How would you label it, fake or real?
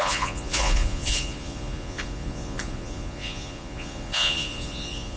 fake